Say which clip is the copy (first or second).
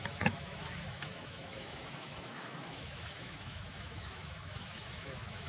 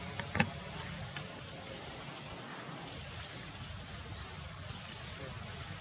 first